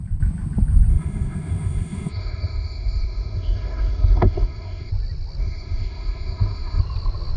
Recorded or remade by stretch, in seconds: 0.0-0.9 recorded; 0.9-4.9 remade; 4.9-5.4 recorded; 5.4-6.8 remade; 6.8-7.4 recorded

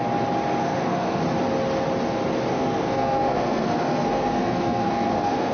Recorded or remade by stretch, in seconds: 0.0-0.6 recorded; 0.6-1.2 remade; 1.2-2.5 recorded; 2.5-5.5 remade